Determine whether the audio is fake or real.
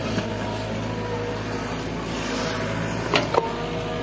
real